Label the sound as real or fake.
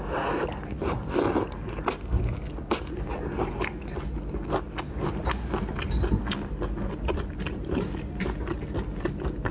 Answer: real